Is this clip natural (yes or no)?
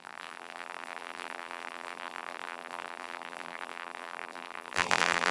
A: no